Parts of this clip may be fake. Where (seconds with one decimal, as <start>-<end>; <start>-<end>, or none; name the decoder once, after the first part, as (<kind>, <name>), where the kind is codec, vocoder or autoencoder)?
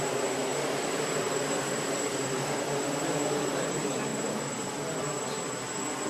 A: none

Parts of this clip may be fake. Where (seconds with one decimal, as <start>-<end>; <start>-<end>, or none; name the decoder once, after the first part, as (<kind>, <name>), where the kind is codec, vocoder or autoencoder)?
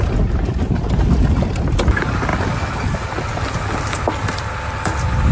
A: none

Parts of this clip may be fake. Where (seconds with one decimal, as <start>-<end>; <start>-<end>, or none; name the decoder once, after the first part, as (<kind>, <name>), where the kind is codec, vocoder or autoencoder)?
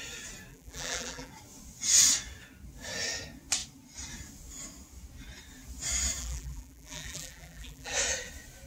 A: 0.5-1.3 (vocoder, BigVGAN v2); 6.2-7.9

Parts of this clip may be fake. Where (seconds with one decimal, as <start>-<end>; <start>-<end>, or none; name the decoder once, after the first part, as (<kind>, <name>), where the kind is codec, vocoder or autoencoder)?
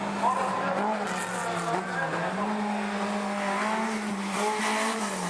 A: none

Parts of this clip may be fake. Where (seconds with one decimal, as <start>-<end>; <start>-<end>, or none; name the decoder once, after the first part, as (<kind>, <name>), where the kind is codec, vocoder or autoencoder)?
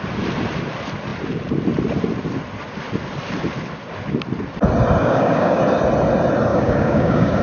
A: 5.0-5.6 (codec, DAC); 6.5-7.4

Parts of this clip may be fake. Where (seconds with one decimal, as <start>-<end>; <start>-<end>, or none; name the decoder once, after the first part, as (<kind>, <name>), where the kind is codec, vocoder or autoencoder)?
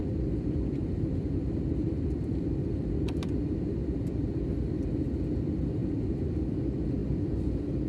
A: 0.0-2.2 (vocoder, BigVGAN v2); 3.8-4.4